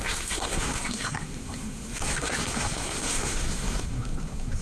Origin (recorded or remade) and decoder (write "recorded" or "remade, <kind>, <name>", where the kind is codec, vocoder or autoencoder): remade, codec, SNAC